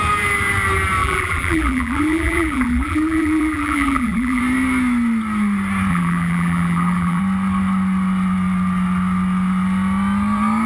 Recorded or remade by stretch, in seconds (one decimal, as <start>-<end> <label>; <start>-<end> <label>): 0.0-1.0 recorded; 1.0-4.4 remade; 4.4-5.9 recorded; 5.9-7.2 remade; 7.2-10.7 recorded